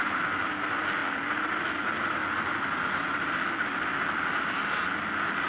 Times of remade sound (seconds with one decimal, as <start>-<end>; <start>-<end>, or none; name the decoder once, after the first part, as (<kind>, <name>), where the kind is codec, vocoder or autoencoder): none